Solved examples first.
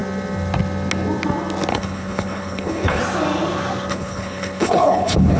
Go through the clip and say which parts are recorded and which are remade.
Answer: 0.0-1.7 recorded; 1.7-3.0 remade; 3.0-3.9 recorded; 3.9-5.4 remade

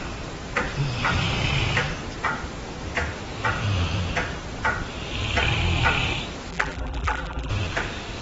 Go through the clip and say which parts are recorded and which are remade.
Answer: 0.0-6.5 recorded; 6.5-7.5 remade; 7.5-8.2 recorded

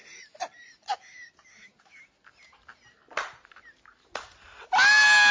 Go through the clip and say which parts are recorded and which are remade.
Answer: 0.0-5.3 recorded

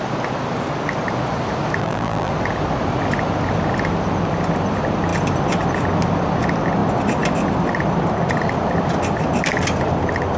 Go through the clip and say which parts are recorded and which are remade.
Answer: 0.0-1.8 recorded; 1.8-2.3 remade; 2.3-10.4 recorded